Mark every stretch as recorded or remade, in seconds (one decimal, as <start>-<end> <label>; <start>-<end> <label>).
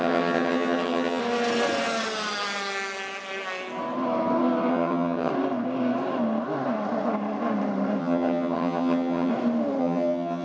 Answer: 0.0-1.2 remade; 1.2-4.7 recorded; 4.7-5.3 remade; 5.3-8.0 recorded; 8.0-9.3 remade; 9.3-9.8 recorded; 9.8-10.4 remade